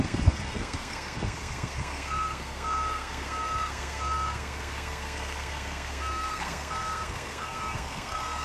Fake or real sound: fake